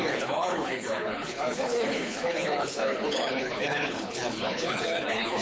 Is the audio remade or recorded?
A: remade